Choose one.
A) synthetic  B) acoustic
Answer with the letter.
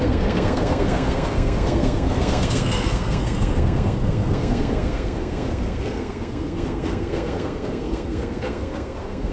A